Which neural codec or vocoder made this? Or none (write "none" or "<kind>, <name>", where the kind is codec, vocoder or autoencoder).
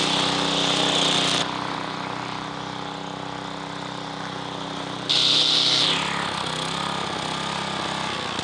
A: none